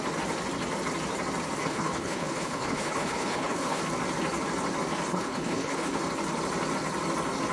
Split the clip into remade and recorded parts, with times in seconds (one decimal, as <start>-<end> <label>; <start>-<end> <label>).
0.0-1.6 recorded; 1.6-3.8 remade; 3.8-5.1 recorded; 5.1-6.0 remade; 6.0-7.5 recorded